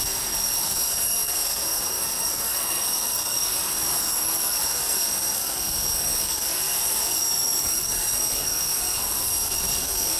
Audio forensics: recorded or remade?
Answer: remade